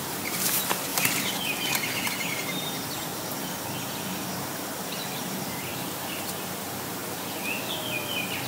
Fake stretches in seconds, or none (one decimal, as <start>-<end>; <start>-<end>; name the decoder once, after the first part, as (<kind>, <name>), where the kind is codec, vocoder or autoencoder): 0.0-3.1 (vocoder, BigVGAN v2); 4.4-7.0